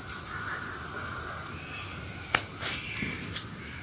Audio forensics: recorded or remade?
recorded